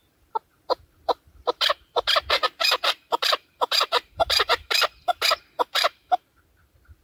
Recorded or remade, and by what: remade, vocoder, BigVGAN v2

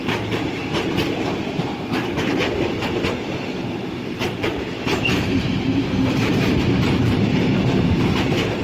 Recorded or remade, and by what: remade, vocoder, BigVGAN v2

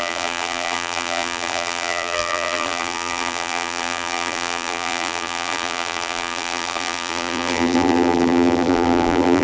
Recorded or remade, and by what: remade, vocoder, BigVGAN v2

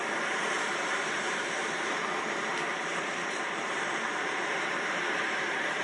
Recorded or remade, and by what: remade, vocoder, BigVGAN v2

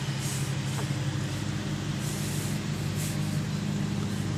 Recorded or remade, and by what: remade, vocoder, BigVGAN v2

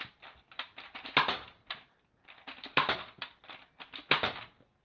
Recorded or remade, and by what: recorded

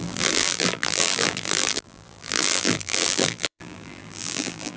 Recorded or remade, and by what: remade, vocoder, BigVGAN v2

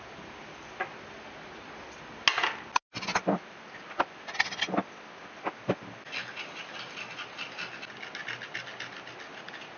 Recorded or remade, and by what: recorded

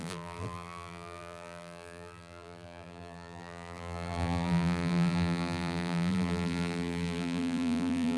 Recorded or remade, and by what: remade, vocoder, BigVGAN v2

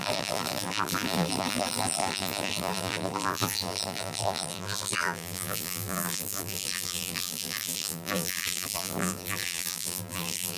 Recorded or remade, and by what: remade, vocoder, BigVGAN v2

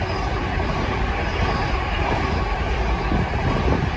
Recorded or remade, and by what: recorded